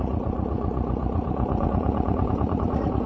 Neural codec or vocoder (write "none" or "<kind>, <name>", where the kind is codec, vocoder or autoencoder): vocoder, Vocos